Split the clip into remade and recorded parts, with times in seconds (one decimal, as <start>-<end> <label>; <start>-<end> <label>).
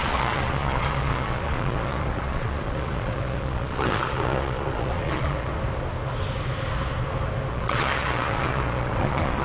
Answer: 0.0-5.5 remade; 5.5-7.5 recorded; 7.5-9.4 remade